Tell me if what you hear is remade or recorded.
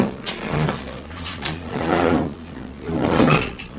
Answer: remade